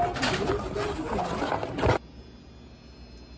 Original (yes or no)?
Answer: yes